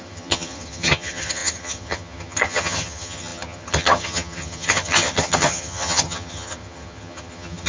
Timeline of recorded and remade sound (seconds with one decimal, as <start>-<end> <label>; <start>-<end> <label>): 0.0-7.7 remade